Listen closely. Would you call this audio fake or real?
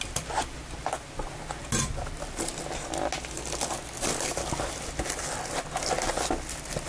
real